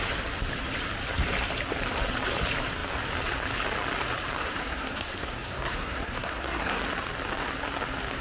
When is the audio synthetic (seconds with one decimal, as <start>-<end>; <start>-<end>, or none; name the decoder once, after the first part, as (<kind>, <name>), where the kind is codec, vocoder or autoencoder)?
4.4-6.8 (codec, SNAC)